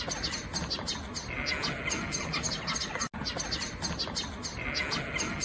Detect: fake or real real